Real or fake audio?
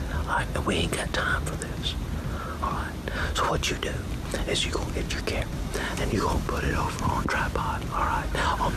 real